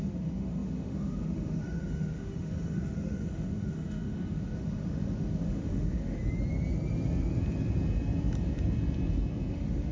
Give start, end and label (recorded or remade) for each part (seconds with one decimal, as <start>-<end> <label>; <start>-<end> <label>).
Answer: 0.0-6.2 remade; 6.2-9.5 recorded; 9.5-9.9 remade